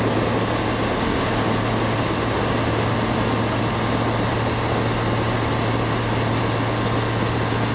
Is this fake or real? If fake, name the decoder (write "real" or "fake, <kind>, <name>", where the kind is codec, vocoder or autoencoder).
real